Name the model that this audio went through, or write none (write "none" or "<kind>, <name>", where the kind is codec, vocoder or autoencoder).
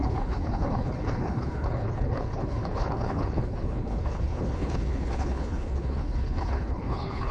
codec, HILCodec